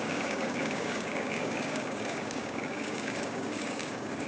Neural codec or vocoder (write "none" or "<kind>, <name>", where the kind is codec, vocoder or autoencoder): codec, DAC